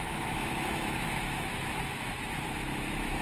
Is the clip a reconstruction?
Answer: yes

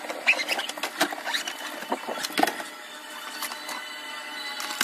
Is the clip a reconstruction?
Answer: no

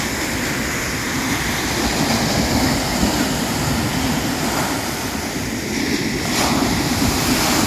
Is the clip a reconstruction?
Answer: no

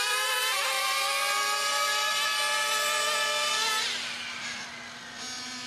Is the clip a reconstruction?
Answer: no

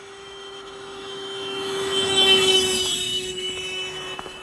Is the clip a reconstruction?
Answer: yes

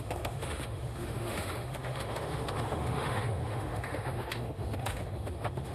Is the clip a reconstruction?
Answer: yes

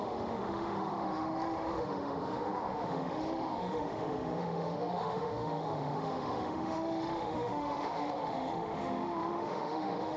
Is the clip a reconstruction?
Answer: yes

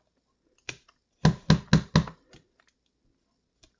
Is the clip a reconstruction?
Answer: no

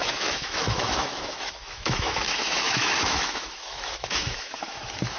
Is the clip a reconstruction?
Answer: yes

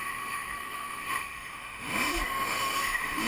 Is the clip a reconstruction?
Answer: yes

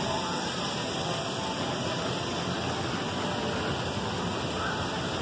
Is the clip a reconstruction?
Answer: no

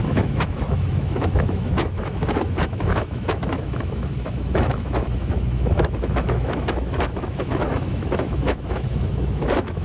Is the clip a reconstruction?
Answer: yes